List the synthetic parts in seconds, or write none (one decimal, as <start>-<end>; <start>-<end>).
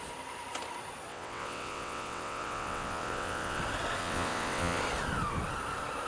1.1-3.6; 4.0-4.8